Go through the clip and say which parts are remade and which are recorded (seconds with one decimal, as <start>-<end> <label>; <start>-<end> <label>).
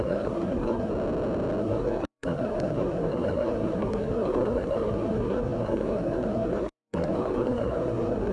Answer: 0.0-0.9 remade; 0.9-1.6 recorded; 1.6-8.3 remade